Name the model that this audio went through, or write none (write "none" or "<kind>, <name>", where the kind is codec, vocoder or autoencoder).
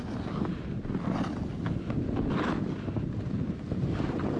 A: none